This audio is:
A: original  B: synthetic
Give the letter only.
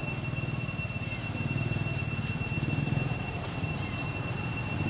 A